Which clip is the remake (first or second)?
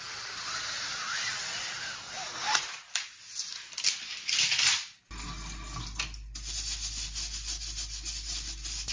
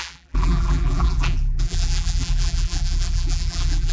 second